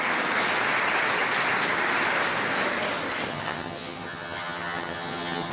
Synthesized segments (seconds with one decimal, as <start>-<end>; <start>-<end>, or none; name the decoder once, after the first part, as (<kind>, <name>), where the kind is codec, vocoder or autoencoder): 3.3-5.5 (vocoder, HiFi-GAN)